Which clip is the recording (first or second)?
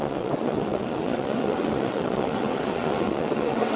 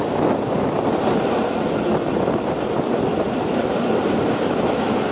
second